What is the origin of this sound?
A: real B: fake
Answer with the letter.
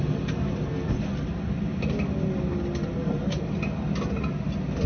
A